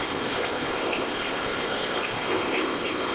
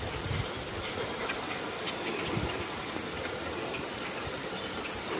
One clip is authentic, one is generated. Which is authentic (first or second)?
second